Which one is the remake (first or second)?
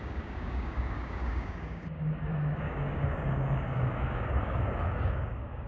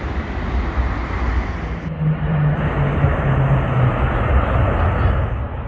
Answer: first